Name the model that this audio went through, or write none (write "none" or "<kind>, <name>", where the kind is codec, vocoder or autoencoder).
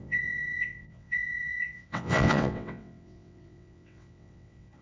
vocoder, WaveNeXt